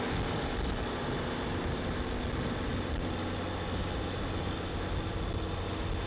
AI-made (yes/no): no